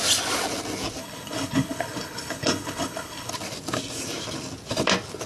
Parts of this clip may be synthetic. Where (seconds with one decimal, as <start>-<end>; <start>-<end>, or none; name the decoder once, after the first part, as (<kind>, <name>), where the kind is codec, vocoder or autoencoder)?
1.0-3.3 (codec, HILCodec)